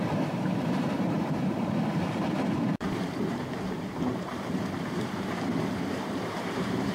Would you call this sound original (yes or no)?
no